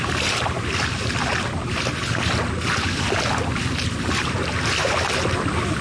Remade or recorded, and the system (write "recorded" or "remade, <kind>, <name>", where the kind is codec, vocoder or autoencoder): recorded